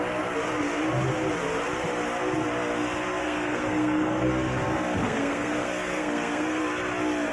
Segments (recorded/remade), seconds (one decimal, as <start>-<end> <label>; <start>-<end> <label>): 0.0-3.2 recorded; 3.2-4.3 remade; 4.3-5.0 recorded; 5.0-6.6 remade; 6.6-7.3 recorded